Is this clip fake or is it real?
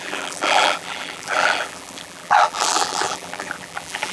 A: fake